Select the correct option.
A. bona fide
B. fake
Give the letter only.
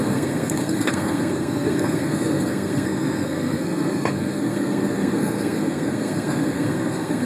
B